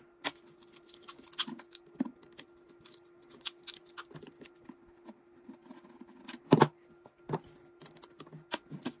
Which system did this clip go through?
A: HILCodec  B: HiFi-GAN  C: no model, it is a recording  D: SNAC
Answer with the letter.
C